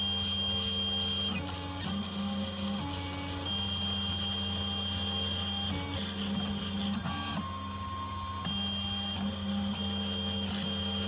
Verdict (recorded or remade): recorded